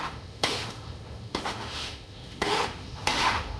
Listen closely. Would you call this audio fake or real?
fake